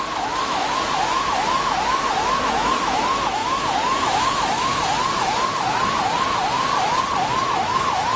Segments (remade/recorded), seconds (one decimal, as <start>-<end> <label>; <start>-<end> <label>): 0.0-4.7 remade; 4.7-7.4 recorded; 7.4-8.2 remade